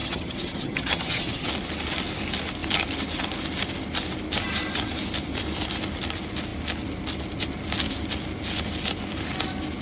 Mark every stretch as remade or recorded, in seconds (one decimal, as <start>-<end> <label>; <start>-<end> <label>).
0.0-1.5 remade; 1.5-9.8 recorded